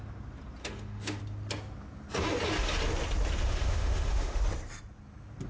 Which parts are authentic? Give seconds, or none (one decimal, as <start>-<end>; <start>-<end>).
0.0-0.6; 1.2-3.4; 4.4-5.5